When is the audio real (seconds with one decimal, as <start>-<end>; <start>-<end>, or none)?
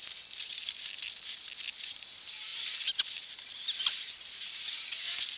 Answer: 0.0-5.4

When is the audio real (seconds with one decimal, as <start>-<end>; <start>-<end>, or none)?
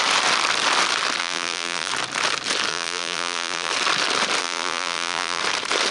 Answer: 0.0-1.2; 1.9-2.7; 3.7-4.4; 5.4-5.9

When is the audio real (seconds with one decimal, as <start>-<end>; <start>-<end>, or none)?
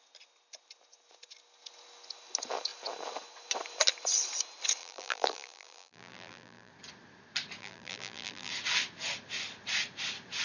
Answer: 0.0-4.8; 6.7-7.6; 8.5-10.4